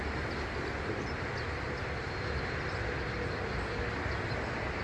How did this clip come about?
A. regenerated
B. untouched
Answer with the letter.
B